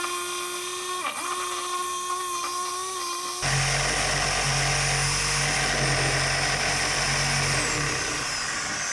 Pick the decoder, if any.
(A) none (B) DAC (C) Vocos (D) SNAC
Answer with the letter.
A